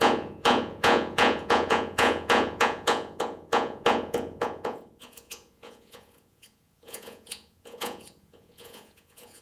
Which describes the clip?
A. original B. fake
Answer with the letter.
B